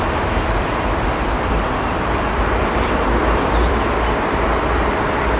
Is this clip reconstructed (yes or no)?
yes